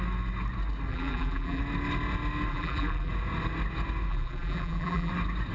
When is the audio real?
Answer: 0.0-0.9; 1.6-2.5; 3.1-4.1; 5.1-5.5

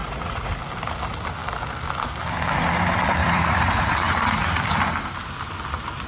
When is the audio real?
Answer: 0.5-3.2; 4.6-6.1

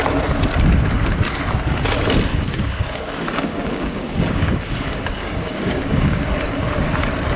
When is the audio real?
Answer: 0.0-2.3; 6.3-7.4

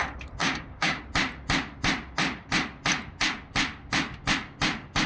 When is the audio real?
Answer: 0.0-0.4; 1.0-5.1

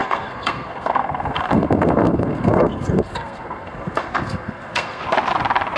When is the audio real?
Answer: 5.0-5.8

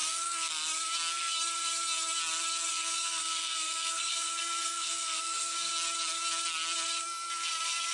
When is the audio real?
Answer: 0.5-2.7; 5.7-7.9